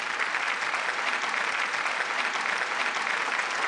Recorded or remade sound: recorded